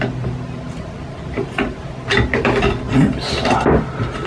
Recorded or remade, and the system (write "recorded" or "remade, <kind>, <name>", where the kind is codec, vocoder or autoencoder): recorded